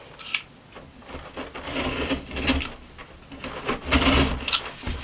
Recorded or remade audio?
recorded